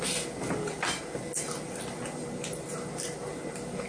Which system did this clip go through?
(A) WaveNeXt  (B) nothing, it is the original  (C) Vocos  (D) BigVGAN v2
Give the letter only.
B